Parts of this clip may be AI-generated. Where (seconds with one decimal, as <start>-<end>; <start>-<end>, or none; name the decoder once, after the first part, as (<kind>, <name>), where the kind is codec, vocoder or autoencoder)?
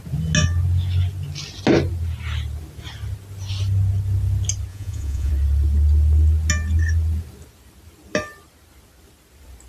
4.7-5.3 (vocoder, Vocos)